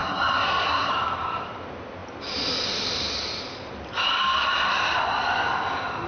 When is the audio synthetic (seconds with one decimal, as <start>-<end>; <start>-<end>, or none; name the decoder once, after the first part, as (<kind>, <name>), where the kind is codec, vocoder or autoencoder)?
0.0-0.9 (codec, SNAC)